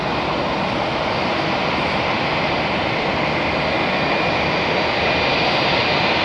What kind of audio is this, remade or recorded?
recorded